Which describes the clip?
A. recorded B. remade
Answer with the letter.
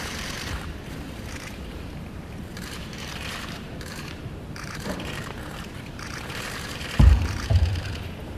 B